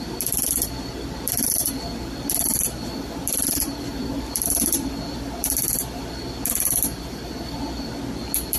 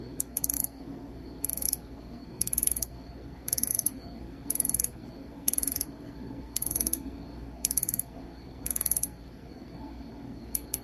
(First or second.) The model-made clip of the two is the second